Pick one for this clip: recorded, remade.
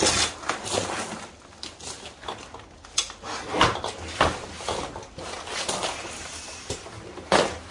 recorded